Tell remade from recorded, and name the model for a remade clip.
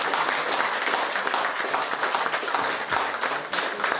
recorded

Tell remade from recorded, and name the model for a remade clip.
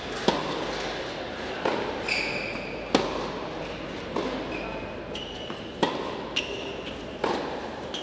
recorded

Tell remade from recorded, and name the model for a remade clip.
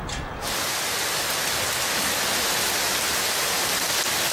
recorded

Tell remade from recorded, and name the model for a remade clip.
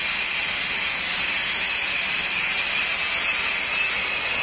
recorded